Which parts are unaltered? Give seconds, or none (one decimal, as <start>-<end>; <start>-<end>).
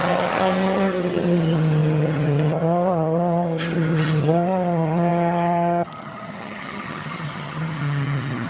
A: none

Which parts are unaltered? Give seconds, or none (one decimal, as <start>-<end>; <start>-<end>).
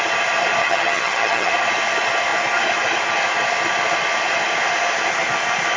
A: 0.0-0.6; 1.5-5.8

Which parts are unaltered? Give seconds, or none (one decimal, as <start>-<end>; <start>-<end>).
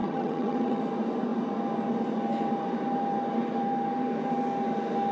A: 0.8-5.1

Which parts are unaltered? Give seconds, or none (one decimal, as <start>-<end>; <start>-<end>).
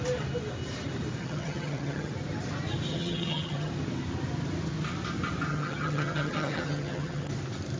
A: 0.0-1.2; 2.1-2.9; 3.7-5.5; 7.3-7.8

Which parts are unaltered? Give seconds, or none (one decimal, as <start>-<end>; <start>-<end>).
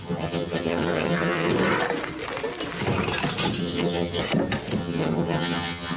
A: 1.5-3.6; 4.2-4.8